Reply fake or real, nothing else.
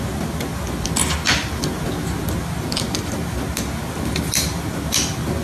real